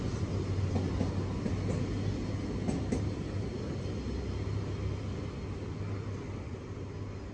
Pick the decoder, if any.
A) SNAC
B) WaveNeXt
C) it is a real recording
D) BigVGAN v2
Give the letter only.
C